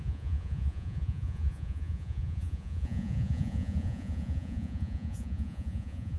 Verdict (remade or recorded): remade